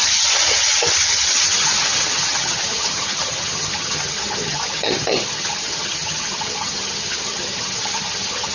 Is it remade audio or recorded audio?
remade